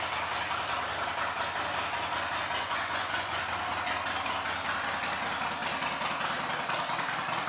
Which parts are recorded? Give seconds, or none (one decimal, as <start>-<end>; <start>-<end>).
0.0-2.6; 3.4-7.5